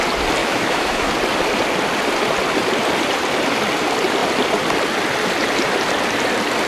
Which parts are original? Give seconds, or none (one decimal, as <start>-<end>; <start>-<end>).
0.0-0.4; 1.1-6.7